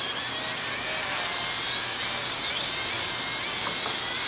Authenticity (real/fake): real